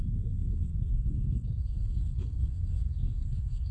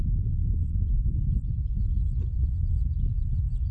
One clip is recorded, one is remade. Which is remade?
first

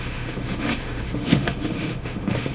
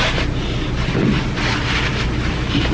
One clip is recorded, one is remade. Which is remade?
first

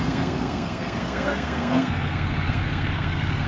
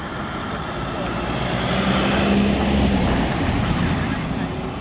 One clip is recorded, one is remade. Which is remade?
first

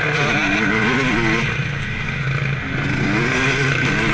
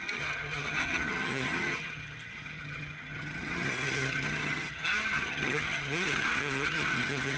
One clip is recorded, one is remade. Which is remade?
second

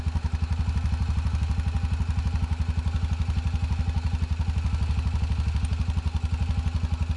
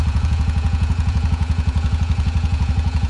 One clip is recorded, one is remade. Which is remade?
second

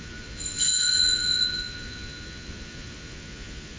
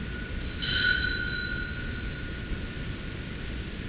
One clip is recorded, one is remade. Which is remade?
first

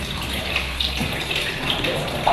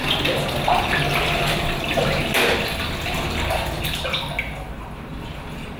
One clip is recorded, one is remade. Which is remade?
first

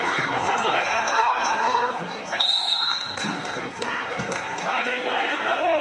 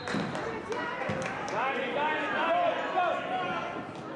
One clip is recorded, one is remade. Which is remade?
first